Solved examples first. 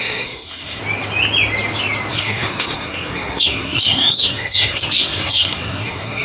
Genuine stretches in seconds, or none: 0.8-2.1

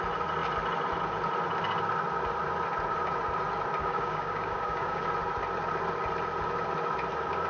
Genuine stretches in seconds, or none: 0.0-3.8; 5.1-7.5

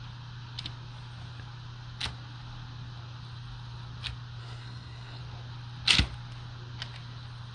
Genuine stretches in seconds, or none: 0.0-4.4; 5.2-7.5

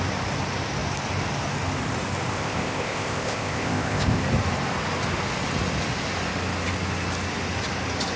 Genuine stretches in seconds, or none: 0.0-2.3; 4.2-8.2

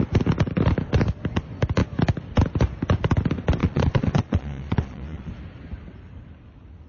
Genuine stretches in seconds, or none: 0.0-3.6; 5.3-6.9

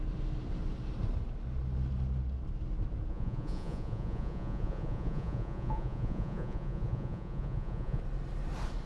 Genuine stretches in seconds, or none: 0.0-3.1; 8.0-8.9

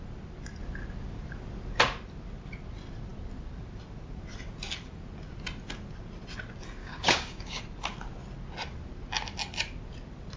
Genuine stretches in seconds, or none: 0.0-6.8; 7.6-10.4

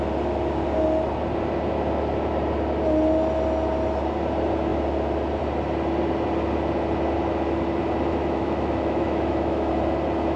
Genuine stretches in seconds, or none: 0.0-8.1; 9.7-10.4